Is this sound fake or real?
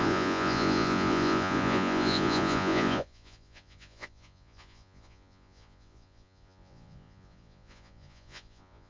fake